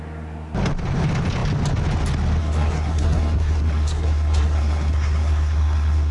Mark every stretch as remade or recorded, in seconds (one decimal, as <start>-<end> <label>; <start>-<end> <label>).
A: 0.0-2.4 recorded; 2.4-6.1 remade